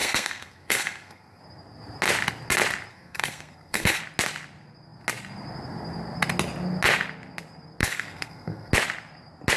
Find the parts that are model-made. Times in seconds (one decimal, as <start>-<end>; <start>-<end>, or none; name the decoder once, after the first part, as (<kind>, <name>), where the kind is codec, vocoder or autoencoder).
0.0-1.4 (codec, SNAC); 2.9-4.0; 7.8-8.7